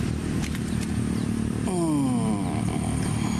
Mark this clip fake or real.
real